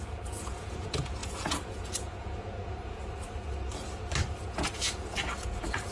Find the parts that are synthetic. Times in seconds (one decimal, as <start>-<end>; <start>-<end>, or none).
0.0-3.0; 4.4-5.9